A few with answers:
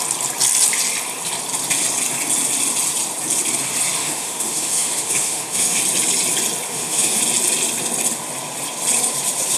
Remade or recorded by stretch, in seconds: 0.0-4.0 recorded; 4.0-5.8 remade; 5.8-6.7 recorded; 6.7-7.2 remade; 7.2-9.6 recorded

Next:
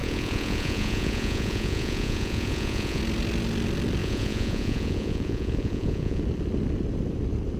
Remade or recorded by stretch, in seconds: 0.0-3.0 remade; 3.0-4.0 recorded; 4.0-6.2 remade; 6.2-7.6 recorded